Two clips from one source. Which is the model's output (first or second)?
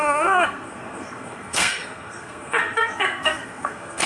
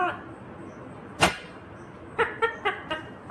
first